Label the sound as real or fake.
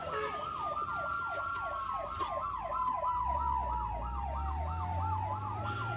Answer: real